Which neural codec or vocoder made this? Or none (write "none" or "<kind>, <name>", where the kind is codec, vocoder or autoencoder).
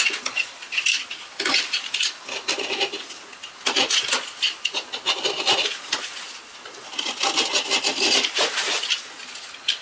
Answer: none